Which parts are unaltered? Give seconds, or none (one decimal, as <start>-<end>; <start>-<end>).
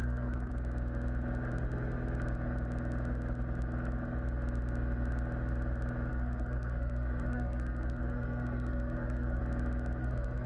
0.5-6.1; 9.4-10.0